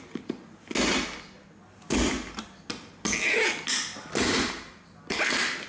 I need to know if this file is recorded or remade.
recorded